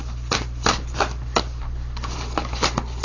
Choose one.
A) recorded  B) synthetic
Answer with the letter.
A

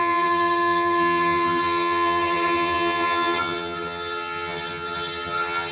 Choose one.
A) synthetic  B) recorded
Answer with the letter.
A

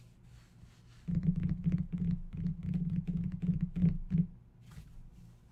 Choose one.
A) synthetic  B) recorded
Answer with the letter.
B